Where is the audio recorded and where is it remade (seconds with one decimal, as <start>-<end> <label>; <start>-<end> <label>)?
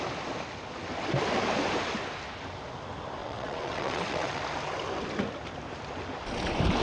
0.0-3.2 recorded; 3.2-4.4 remade; 4.4-6.8 recorded